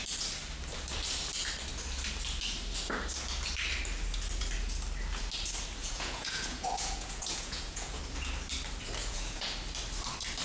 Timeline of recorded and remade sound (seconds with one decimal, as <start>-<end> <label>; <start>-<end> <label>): 0.0-5.8 recorded; 5.8-8.0 remade; 8.0-9.0 recorded; 9.0-9.5 remade; 9.5-10.4 recorded